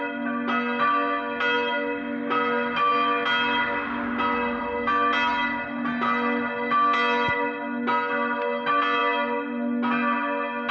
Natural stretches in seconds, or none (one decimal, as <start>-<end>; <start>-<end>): 0.0-10.7